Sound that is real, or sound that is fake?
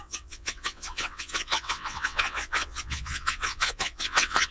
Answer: fake